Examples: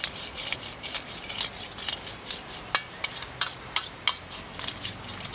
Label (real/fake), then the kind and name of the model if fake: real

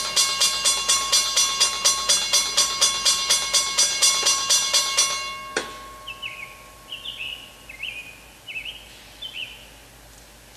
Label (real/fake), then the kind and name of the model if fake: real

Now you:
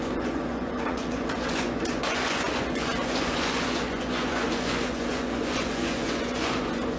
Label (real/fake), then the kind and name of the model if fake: fake, vocoder, Vocos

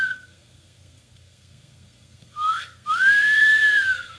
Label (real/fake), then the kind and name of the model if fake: fake, codec, SNAC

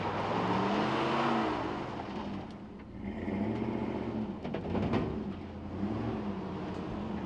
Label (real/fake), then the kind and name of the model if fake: real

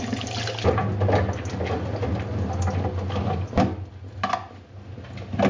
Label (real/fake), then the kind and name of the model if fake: real